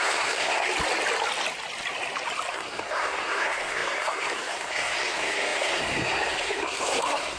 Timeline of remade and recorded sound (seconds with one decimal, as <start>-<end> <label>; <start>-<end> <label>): 0.0-0.7 remade; 0.7-2.5 recorded; 2.5-7.4 remade